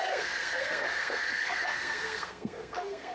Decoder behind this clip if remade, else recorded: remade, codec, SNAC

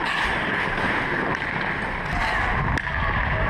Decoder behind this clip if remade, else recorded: recorded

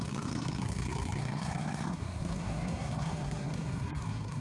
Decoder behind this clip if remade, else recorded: remade, codec, SNAC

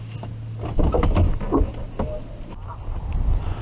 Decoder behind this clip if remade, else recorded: recorded